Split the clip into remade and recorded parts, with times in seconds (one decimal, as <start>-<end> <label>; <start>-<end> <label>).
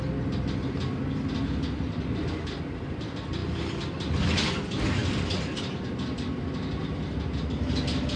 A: 0.0-8.2 recorded